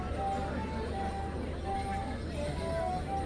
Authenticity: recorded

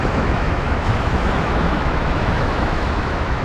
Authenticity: remade